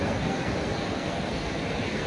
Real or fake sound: fake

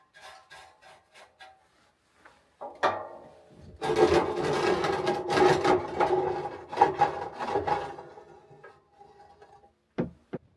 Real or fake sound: real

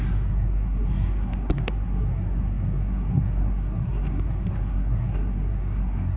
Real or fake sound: fake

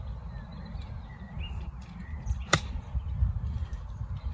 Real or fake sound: real